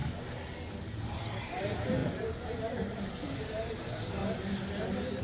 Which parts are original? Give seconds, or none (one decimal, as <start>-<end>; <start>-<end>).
0.0-1.4; 4.2-5.2